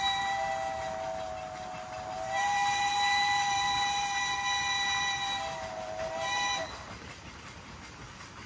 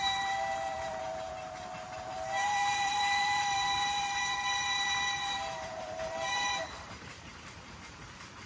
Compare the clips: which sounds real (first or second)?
first